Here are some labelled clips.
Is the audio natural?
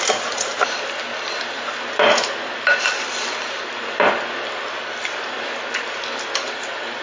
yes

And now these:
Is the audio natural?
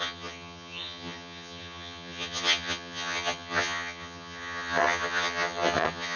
no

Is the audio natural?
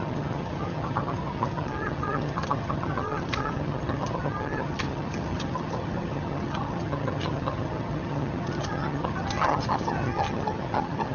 no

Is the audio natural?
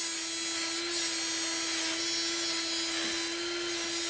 yes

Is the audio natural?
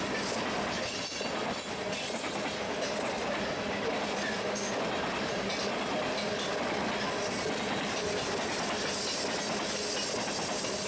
yes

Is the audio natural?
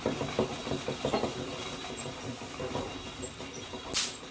yes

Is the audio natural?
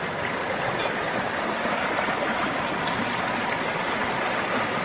yes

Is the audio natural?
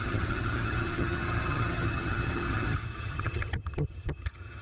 no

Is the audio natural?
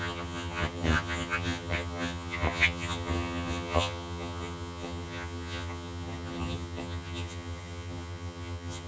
no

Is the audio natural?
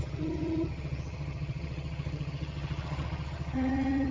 no